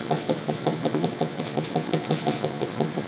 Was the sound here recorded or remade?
remade